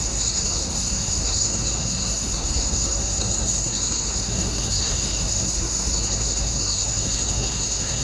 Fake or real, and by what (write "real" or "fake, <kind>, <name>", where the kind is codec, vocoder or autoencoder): fake, codec, SNAC